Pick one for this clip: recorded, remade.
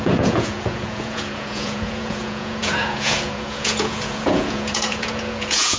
remade